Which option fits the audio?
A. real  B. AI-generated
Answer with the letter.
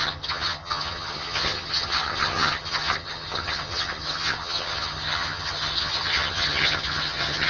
B